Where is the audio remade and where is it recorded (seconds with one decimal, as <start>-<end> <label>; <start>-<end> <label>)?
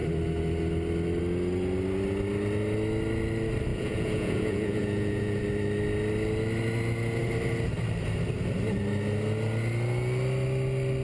0.0-3.7 recorded; 3.7-5.4 remade; 5.4-11.0 recorded